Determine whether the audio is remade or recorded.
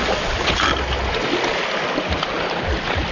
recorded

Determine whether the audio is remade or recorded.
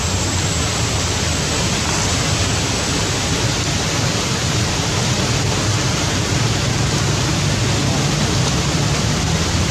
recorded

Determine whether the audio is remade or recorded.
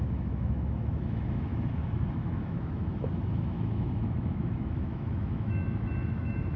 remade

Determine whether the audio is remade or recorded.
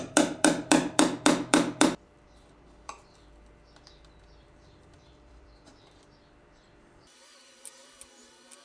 remade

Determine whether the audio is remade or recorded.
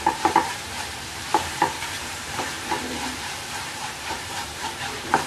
remade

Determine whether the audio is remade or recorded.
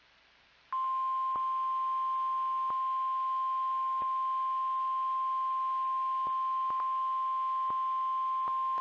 recorded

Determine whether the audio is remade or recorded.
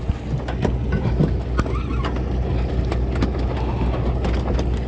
recorded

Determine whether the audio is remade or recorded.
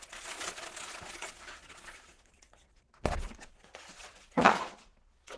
remade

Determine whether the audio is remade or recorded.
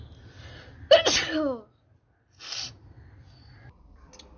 recorded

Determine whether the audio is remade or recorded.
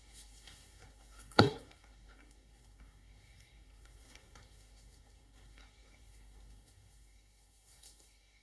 remade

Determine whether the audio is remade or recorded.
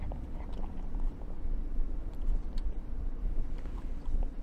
remade